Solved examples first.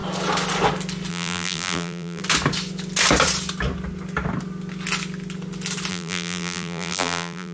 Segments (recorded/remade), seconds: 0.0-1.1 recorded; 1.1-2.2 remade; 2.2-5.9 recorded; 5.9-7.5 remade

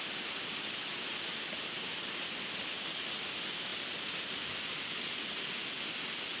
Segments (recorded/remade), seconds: 0.0-3.7 recorded; 3.7-4.9 remade; 4.9-5.6 recorded; 5.6-6.4 remade